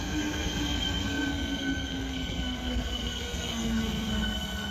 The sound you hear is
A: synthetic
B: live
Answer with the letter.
A